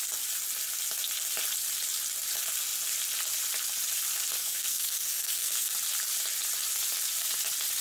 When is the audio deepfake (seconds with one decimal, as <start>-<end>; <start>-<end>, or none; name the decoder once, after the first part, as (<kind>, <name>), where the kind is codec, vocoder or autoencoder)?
4.4-5.7 (codec, SNAC)